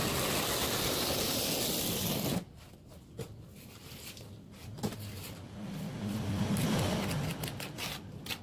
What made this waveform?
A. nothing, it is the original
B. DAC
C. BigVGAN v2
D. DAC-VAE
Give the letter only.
A